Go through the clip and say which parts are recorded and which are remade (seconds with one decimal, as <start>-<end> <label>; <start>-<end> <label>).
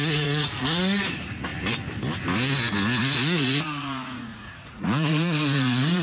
0.0-1.5 remade; 1.5-3.0 recorded; 3.0-6.0 remade